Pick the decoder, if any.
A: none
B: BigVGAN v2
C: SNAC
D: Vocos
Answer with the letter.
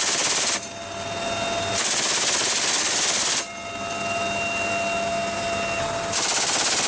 A